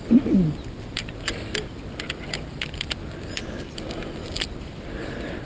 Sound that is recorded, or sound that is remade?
recorded